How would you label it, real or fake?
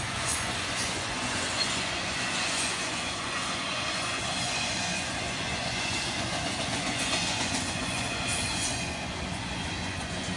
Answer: fake